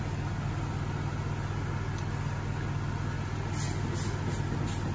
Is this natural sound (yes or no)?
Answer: yes